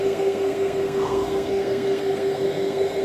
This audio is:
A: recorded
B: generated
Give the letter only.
B